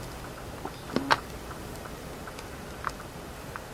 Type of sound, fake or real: fake